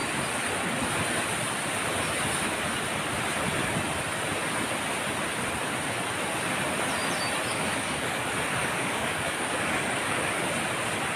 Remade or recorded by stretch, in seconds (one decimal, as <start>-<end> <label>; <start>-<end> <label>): 0.0-7.5 recorded; 7.5-8.2 remade; 8.2-8.6 recorded; 8.6-10.3 remade; 10.3-11.2 recorded